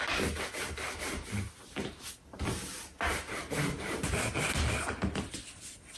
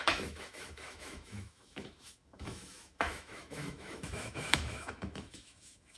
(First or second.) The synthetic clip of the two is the second